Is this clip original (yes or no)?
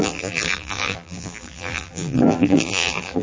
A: no